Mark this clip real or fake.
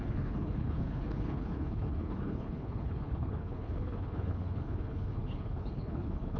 fake